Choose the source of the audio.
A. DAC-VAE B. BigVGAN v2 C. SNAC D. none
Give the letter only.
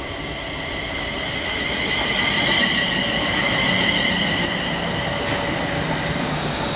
D